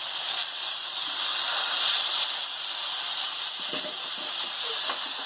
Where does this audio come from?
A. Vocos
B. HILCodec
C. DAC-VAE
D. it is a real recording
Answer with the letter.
D